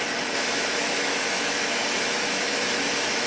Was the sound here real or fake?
fake